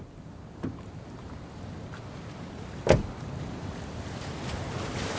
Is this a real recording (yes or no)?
no